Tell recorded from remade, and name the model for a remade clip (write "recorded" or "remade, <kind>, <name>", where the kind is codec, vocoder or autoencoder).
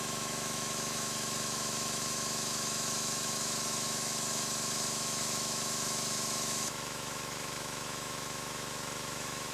remade, autoencoder, DAC-VAE